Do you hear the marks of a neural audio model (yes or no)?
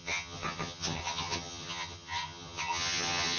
yes